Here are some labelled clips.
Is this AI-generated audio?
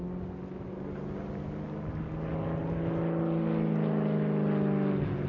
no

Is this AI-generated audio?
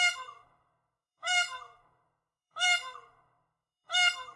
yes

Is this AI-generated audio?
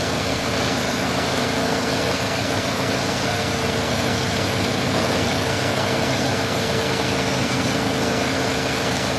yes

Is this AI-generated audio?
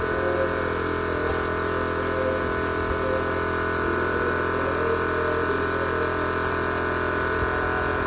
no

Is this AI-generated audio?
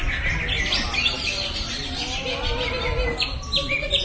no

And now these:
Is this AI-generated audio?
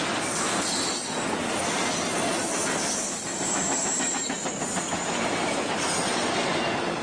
no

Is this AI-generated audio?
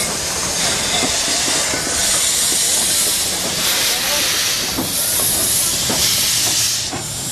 no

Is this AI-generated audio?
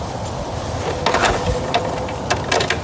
no